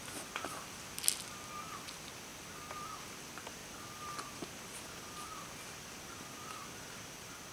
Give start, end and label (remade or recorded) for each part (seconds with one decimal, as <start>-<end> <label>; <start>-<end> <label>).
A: 0.0-7.5 recorded